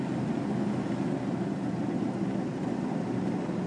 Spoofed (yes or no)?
no